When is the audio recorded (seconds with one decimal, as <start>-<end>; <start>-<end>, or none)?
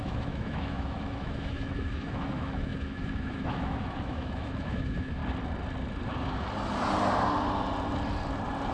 5.2-8.7